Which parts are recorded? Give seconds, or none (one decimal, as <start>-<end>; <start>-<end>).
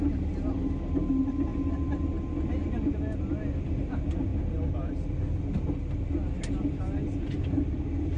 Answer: 0.0-8.2